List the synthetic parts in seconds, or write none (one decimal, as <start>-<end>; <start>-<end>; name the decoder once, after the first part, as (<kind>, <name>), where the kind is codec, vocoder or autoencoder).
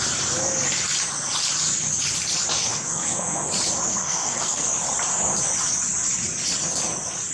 2.7-3.5 (codec, SNAC); 3.9-4.7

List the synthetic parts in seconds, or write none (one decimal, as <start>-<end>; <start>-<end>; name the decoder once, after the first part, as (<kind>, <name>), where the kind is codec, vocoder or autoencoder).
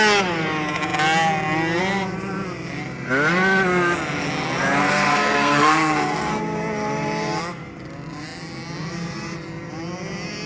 4.8-6.4 (codec, SNAC)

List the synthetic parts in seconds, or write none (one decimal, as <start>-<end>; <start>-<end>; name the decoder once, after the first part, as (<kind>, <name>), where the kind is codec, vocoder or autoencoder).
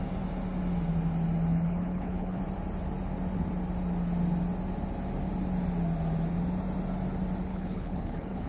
1.5-2.4 (codec, HILCodec); 7.5-8.5